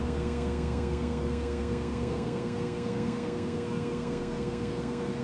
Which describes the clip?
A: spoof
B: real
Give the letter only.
A